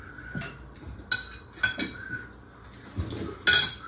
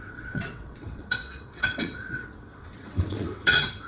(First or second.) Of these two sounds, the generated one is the second